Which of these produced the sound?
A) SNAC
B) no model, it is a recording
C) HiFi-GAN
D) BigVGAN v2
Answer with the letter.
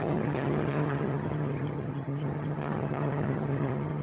C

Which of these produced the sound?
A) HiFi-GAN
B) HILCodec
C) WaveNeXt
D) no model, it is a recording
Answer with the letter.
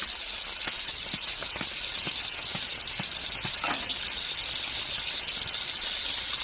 D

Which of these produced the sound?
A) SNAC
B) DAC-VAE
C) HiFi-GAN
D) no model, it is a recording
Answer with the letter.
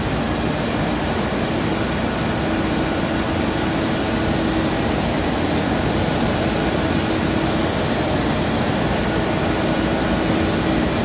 D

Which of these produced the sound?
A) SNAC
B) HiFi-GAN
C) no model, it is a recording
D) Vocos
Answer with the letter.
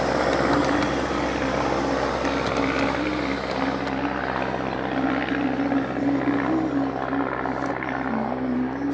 C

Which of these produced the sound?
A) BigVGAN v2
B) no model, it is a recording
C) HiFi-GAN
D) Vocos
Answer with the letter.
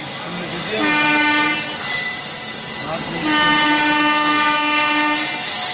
B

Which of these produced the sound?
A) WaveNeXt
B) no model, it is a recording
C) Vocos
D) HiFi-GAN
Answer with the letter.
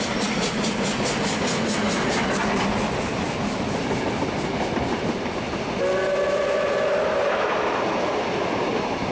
B